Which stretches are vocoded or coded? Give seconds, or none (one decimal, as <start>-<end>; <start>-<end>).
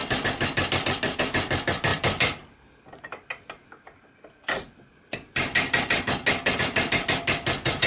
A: none